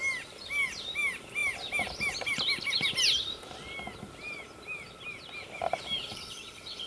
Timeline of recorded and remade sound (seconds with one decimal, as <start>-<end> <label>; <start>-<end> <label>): 0.0-6.1 recorded; 6.1-6.9 remade